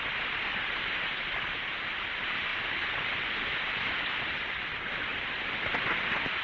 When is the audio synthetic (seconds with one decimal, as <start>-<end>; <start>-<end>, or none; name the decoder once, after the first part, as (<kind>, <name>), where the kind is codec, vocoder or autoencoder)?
none